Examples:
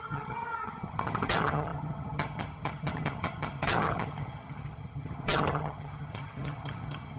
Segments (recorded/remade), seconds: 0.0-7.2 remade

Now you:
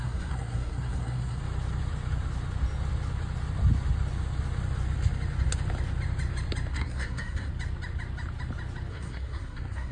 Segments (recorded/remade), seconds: 0.0-1.4 remade; 1.4-6.7 recorded; 6.7-7.5 remade; 7.5-8.9 recorded; 8.9-9.9 remade

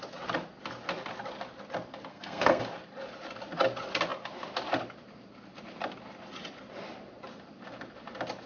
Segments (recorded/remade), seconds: 0.0-2.1 recorded; 2.1-2.6 remade; 2.6-8.5 recorded

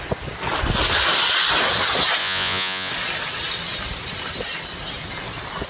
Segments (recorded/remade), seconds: 0.0-2.2 recorded; 2.2-2.9 remade; 2.9-5.7 recorded

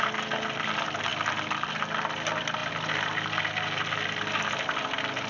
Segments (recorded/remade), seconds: 0.0-5.3 recorded